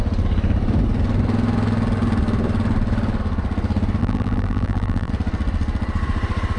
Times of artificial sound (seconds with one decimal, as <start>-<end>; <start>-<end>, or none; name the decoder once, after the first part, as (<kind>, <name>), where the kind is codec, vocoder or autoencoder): 4.0-5.1 (vocoder, BigVGAN v2)